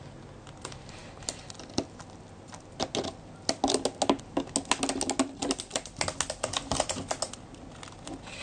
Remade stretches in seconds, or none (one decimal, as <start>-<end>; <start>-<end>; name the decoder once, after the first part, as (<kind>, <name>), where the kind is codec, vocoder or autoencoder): none